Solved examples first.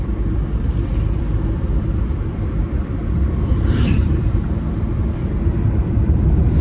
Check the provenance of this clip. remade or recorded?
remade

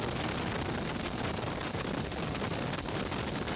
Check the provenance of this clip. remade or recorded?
recorded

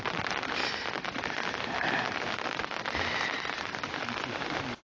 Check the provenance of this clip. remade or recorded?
recorded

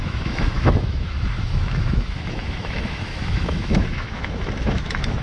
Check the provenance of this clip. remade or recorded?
remade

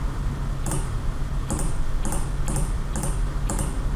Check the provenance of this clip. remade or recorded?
recorded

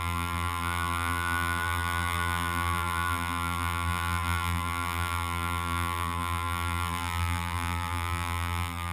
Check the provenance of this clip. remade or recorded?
remade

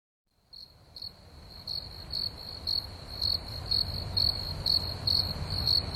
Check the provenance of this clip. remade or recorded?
remade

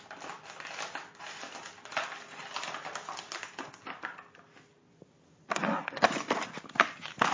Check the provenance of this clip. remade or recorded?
recorded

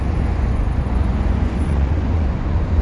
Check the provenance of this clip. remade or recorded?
remade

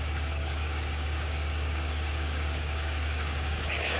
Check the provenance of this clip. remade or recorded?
remade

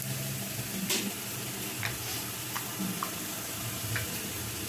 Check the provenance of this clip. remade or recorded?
recorded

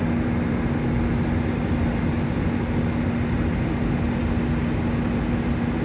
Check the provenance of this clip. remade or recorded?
recorded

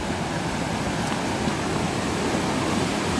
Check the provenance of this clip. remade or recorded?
recorded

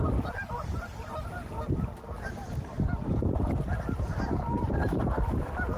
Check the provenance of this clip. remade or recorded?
remade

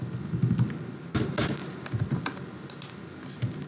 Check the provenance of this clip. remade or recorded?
recorded